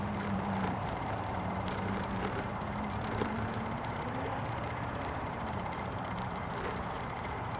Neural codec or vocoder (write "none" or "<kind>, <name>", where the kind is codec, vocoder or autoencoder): vocoder, BigVGAN v2